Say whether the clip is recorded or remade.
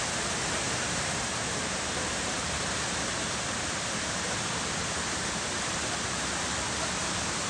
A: remade